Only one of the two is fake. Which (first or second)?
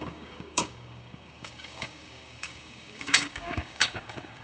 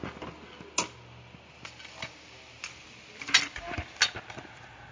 first